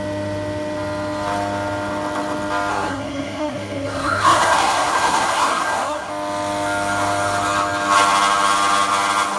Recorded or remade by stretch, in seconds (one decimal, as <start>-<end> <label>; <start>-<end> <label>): 0.0-2.7 recorded; 2.7-6.1 remade; 6.1-9.4 recorded